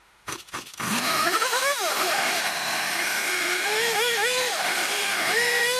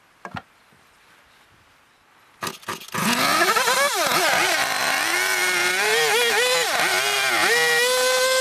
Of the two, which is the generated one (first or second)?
first